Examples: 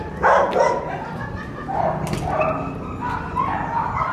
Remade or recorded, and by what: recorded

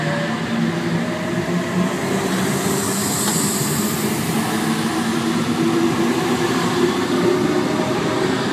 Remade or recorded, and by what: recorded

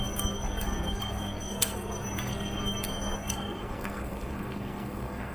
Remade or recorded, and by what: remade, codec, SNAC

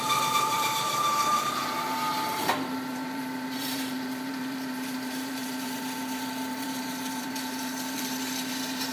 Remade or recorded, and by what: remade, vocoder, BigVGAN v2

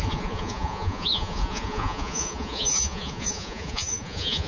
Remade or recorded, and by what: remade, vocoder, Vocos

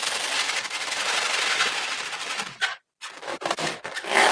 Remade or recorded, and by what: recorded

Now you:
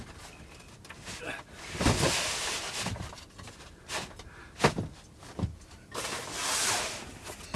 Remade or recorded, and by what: recorded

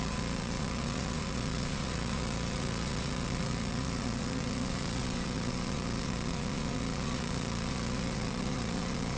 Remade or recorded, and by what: remade, vocoder, Vocos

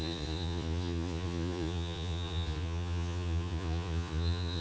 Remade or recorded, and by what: remade, vocoder, Vocos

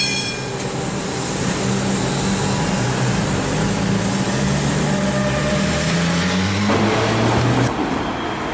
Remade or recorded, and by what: recorded